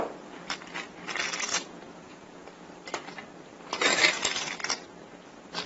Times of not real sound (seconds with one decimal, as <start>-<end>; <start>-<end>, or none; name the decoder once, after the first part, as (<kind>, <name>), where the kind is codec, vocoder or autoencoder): 1.5-2.3 (vocoder, Vocos)